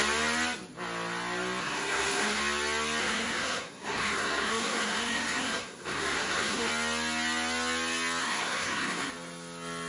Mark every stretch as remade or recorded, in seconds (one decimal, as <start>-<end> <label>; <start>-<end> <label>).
0.0-1.6 recorded; 1.6-2.4 remade; 2.4-3.0 recorded; 3.0-6.7 remade; 6.7-8.2 recorded; 8.2-9.1 remade; 9.1-9.9 recorded